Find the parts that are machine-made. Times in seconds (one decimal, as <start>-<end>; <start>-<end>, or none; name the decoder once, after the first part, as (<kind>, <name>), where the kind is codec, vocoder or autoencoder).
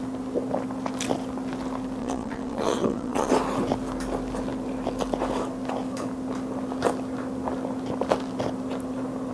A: 2.0-3.3 (vocoder, Vocos)